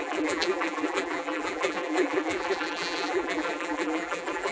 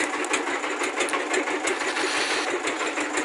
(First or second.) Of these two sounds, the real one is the second